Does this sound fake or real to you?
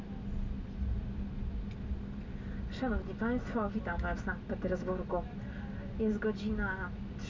real